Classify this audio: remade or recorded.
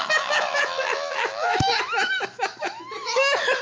remade